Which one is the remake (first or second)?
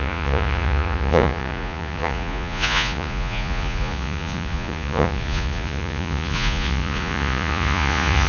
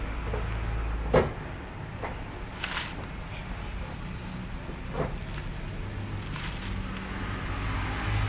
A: first